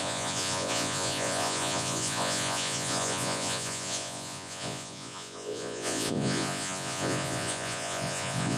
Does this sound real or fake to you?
fake